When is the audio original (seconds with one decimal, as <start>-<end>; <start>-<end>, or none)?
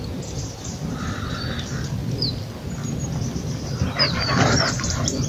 0.0-5.3